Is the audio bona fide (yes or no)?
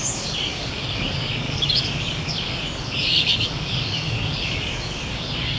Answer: no